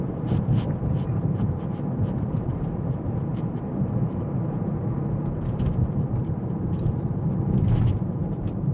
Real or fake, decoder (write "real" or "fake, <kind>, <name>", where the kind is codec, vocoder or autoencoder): fake, vocoder, BigVGAN v2